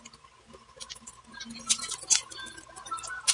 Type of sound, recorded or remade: recorded